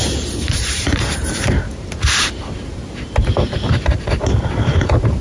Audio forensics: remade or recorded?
remade